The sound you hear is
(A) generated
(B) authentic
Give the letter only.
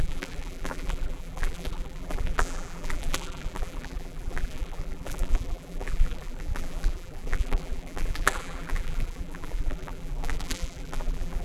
A